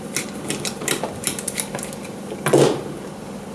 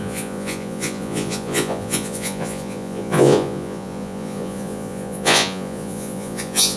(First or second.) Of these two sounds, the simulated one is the second